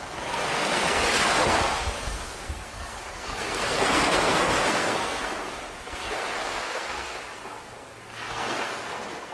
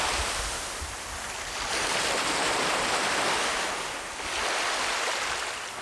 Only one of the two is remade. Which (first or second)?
first